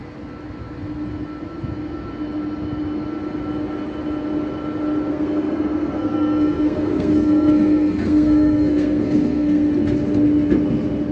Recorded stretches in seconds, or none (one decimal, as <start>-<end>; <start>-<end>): 0.0-5.1; 9.7-11.1